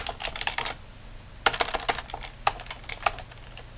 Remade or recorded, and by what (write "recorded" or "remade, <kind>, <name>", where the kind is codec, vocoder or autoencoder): recorded